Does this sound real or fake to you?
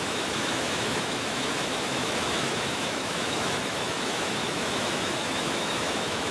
fake